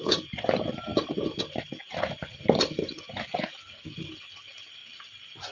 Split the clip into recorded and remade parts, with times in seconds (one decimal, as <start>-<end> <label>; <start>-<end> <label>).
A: 0.0-0.9 recorded; 0.9-1.4 remade; 1.4-2.2 recorded; 2.2-3.1 remade; 3.1-4.8 recorded; 4.8-5.5 remade